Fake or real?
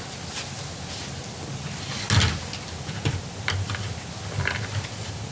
real